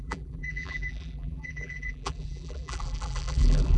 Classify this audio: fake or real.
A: fake